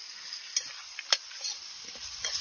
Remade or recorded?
recorded